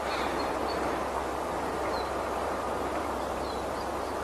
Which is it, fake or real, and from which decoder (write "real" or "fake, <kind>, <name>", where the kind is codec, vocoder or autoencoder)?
fake, vocoder, BigVGAN v2